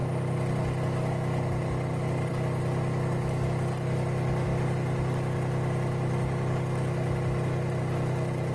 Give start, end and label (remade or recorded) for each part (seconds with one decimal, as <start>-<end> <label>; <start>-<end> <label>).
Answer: 0.0-8.5 recorded